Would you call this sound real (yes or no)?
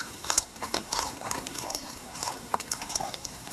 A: no